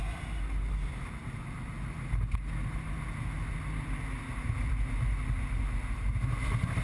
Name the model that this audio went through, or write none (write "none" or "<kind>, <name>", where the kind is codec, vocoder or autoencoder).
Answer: none